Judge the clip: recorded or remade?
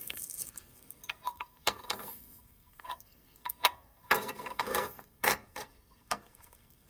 remade